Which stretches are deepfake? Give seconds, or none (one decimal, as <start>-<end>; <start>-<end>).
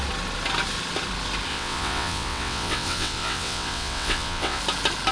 1.5-4.6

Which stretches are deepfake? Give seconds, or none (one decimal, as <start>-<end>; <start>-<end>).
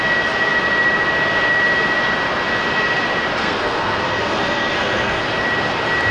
3.4-5.2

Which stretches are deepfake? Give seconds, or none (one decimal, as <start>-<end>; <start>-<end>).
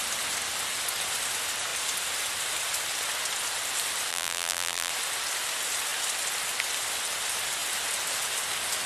4.1-4.9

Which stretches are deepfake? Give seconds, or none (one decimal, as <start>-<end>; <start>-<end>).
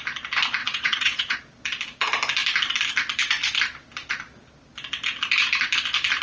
0.6-1.4